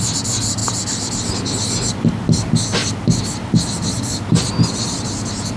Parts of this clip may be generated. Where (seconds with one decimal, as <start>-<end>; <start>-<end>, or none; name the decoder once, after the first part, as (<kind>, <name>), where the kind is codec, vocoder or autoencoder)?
none